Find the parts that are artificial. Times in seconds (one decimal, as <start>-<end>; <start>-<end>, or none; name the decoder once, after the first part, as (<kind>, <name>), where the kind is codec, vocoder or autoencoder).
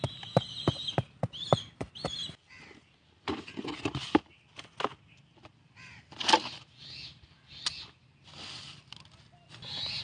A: none